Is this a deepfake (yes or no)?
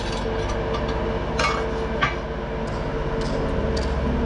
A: no